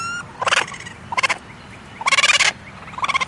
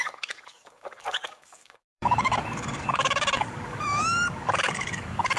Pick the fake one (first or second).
second